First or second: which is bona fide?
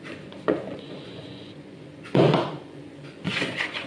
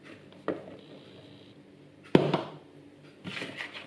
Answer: second